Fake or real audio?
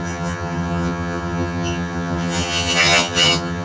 fake